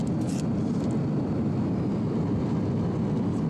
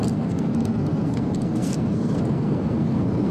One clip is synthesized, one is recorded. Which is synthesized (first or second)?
second